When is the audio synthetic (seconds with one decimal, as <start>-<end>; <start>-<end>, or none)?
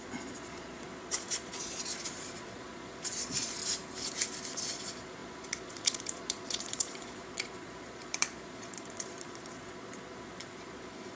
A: 0.0-3.6; 4.6-11.2